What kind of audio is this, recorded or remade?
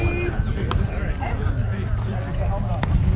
recorded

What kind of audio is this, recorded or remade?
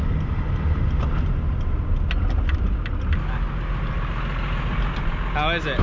recorded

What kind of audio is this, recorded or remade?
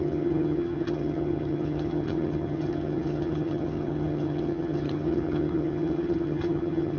remade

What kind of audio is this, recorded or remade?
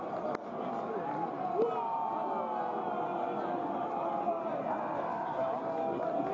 recorded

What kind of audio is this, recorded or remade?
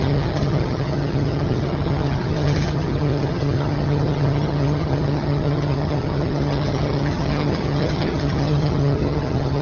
remade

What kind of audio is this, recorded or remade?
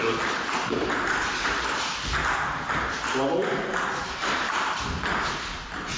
recorded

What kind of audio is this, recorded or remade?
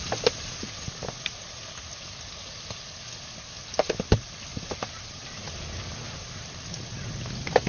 recorded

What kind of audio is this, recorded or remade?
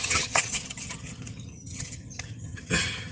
remade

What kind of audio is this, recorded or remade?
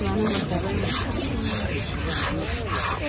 recorded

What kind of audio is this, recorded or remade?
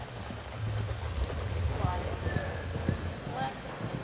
recorded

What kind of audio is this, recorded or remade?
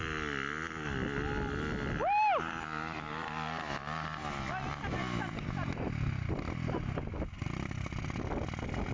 recorded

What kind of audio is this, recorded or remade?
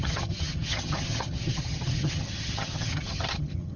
remade